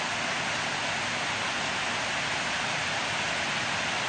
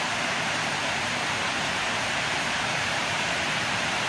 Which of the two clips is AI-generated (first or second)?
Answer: second